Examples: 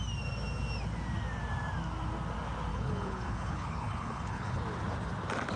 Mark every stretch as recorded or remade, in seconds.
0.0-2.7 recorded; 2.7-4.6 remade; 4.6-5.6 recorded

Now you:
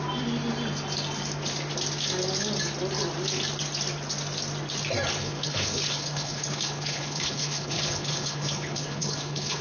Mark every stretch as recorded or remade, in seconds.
0.0-5.2 recorded; 5.2-9.6 remade

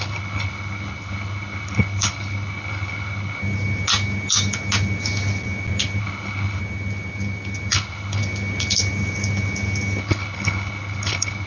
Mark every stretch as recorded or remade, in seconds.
0.0-3.4 remade; 3.4-6.0 recorded; 6.0-6.6 remade; 6.6-7.7 recorded; 7.7-8.2 remade; 8.2-10.0 recorded; 10.0-11.5 remade